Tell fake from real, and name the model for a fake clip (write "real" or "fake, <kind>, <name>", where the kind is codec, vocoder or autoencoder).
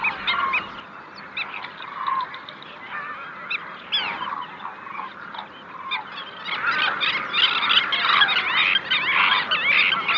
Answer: real